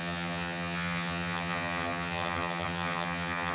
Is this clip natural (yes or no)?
no